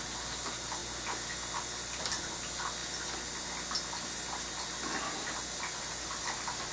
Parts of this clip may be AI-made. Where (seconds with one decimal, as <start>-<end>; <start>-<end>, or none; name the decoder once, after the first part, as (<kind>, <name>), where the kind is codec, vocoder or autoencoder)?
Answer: none